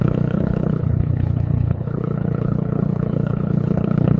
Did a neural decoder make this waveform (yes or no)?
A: yes